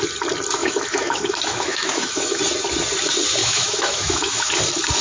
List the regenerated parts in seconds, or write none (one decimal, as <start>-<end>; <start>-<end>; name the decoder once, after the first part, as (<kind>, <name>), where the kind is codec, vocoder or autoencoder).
0.6-2.4 (autoencoder, DAC-VAE); 3.4-4.5